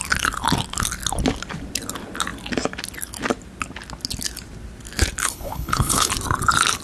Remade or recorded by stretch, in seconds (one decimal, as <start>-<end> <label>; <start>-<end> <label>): 0.0-5.2 recorded; 5.2-6.1 remade; 6.1-6.8 recorded

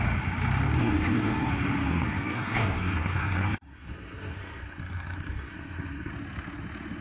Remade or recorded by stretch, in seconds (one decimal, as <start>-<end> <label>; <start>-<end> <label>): 0.0-0.8 recorded; 0.8-1.5 remade; 1.5-1.9 recorded; 1.9-6.1 remade; 6.1-7.0 recorded